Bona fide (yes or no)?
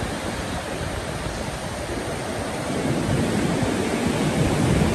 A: yes